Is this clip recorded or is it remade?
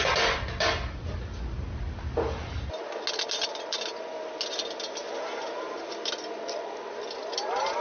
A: recorded